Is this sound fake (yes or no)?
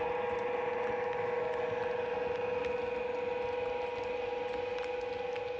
no